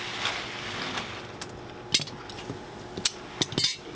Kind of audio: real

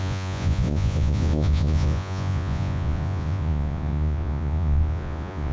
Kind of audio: fake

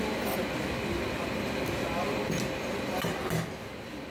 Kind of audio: real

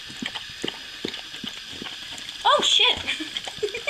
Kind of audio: real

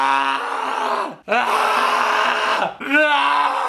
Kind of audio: real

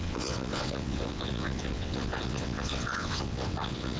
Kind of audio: fake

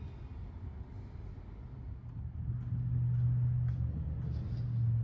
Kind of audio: real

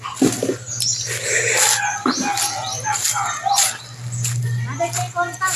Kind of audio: real